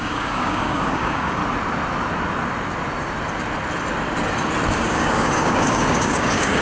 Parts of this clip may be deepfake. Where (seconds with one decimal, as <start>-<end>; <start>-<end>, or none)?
0.0-1.4; 4.7-6.6